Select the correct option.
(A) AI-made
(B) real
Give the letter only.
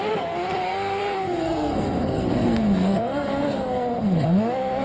A